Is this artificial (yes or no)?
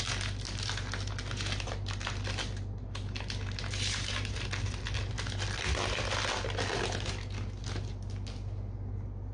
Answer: no